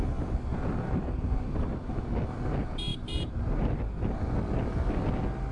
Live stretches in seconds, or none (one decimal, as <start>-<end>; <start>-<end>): 0.0-0.5; 1.7-2.9; 3.8-5.5